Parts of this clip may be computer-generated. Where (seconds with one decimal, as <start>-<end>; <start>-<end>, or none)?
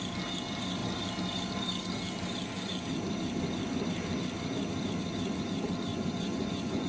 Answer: 5.9-6.9